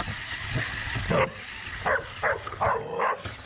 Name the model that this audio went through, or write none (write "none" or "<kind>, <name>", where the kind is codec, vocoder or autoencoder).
none